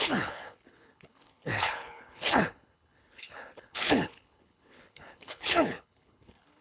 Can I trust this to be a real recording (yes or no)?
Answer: no